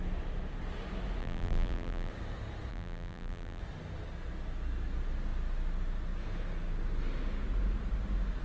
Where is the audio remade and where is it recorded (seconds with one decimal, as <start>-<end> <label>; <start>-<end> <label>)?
0.0-1.2 recorded; 1.2-2.1 remade; 2.1-2.7 recorded; 2.7-3.6 remade; 3.6-8.4 recorded